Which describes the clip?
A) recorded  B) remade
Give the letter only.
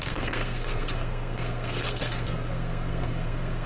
B